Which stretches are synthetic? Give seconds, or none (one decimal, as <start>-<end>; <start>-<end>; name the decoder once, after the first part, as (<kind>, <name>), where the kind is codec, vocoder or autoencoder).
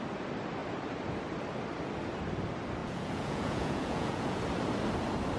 2.8-4.4 (vocoder, Vocos)